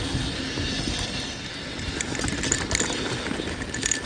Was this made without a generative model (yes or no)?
yes